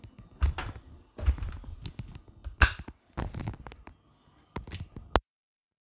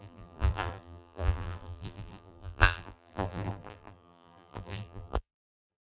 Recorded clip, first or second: first